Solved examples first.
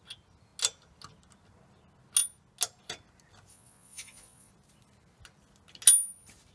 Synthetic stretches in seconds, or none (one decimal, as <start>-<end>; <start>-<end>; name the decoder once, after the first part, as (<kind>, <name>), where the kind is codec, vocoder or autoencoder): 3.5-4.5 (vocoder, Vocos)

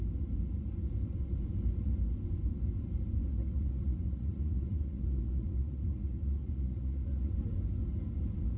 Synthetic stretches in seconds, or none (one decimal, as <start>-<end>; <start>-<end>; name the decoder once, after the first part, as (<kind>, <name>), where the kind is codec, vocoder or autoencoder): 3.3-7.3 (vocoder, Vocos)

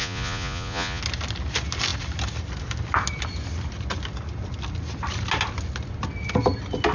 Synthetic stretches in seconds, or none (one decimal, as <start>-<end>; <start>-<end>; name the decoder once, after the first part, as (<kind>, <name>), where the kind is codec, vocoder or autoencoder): 0.0-1.0 (vocoder, Vocos)